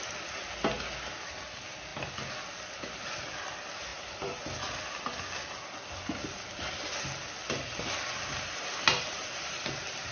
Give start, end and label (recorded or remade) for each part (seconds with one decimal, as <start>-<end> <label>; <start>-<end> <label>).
0.0-3.9 recorded; 3.9-4.6 remade; 4.6-8.7 recorded; 8.7-9.6 remade; 9.6-10.1 recorded